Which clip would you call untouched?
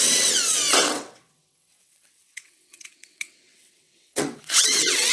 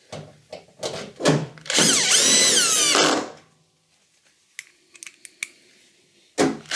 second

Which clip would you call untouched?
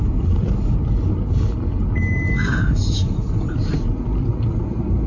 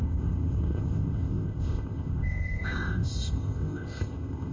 first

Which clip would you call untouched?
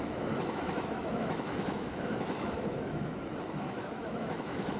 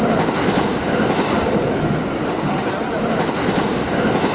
second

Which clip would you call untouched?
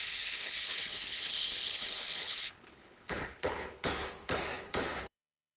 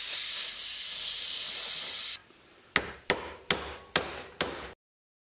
second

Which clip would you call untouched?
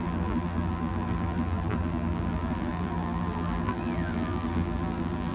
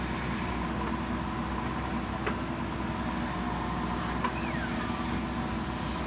second